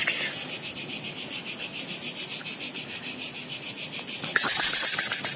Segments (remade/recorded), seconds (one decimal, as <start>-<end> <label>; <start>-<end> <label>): 0.0-5.4 recorded